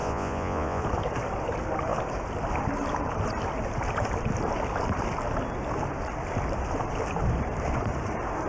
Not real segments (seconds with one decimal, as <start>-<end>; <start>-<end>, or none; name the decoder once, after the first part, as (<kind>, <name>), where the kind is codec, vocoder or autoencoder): 0.0-0.8 (vocoder, Vocos)